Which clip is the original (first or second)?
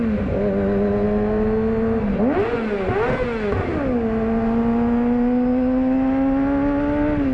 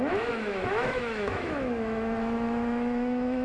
first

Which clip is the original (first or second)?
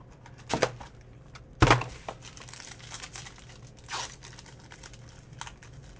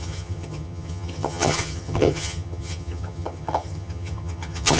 first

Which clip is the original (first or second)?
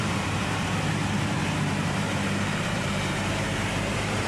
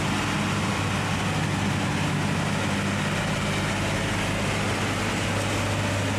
second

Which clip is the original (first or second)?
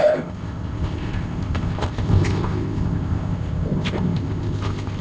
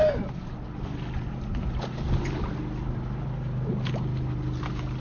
second